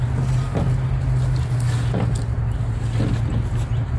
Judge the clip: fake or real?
real